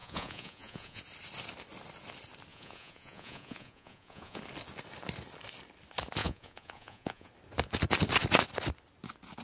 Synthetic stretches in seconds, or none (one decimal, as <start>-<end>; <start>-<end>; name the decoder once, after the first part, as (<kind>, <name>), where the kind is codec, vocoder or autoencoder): 0.0-1.0 (vocoder, Vocos); 2.5-4.4; 6.2-7.3